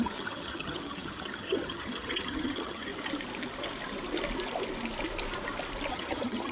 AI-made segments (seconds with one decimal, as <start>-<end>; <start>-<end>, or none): 0.0-2.9; 5.9-6.5